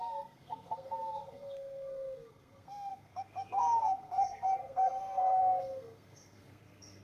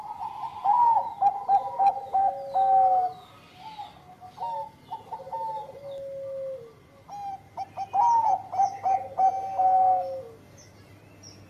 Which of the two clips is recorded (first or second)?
second